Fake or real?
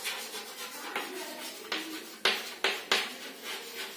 real